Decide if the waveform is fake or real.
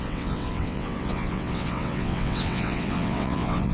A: fake